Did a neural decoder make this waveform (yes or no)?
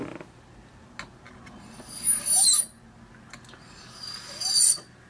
no